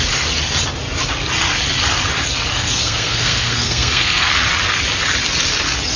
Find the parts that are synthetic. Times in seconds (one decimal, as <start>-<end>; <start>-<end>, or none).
2.5-4.3